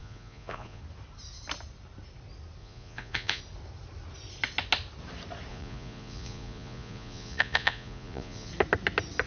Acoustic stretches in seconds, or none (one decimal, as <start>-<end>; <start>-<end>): 0.8-2.6; 3.4-5.5; 8.5-9.3